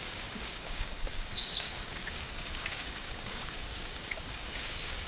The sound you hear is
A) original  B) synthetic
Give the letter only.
B